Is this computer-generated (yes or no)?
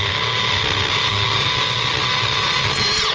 no